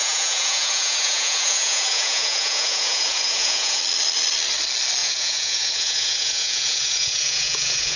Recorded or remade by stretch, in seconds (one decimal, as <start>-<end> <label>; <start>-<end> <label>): 0.0-3.8 remade; 3.8-5.0 recorded; 5.0-8.0 remade